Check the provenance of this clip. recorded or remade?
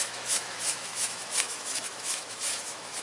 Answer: remade